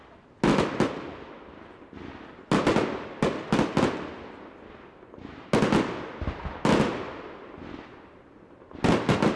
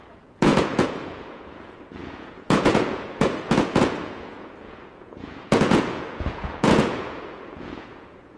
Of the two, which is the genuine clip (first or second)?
first